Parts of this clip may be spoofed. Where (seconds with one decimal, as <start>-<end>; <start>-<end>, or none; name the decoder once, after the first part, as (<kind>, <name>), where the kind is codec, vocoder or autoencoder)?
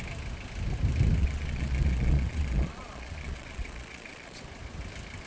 1.2-4.4 (vocoder, Vocos)